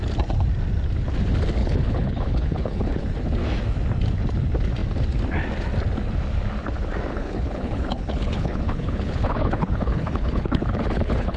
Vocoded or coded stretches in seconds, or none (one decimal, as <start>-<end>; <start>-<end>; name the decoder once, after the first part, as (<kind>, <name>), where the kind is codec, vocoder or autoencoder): 1.6-3.0 (codec, HILCodec); 7.1-11.4